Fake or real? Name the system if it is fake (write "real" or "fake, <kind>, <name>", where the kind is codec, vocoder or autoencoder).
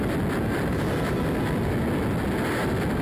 real